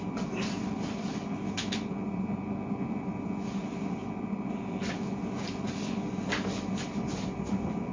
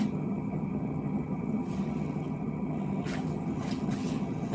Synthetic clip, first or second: second